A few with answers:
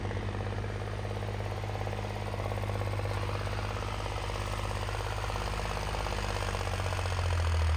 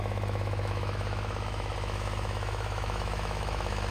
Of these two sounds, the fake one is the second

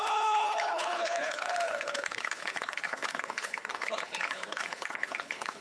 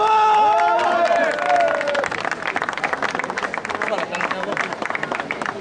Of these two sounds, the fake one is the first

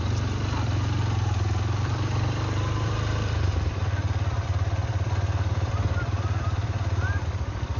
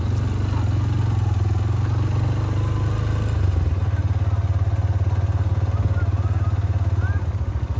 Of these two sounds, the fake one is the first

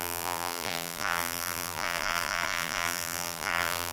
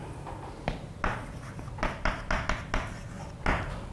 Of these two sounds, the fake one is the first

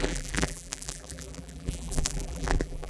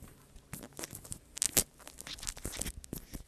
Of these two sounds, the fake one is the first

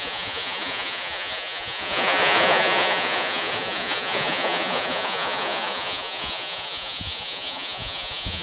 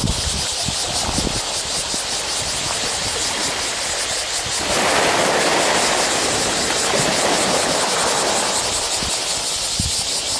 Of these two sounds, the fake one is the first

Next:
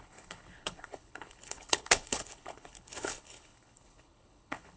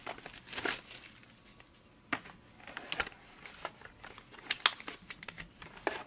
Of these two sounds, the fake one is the first